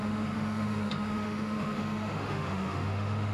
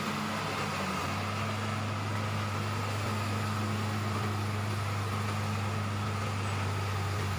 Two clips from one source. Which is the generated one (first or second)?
first